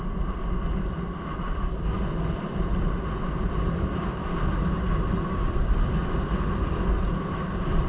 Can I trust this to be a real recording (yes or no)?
yes